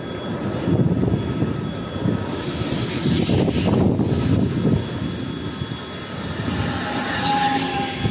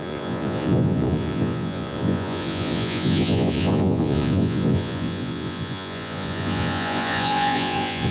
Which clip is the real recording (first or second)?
first